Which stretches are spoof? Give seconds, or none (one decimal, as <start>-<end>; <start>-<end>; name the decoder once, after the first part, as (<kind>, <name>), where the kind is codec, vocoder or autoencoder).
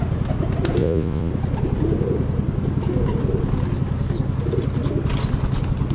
0.8-1.3 (vocoder, Vocos)